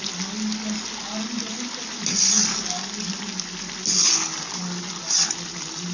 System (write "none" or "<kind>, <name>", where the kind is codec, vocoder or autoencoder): none